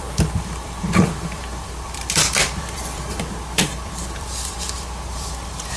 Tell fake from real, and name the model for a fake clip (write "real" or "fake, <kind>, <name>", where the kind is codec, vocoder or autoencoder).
fake, vocoder, BigVGAN v2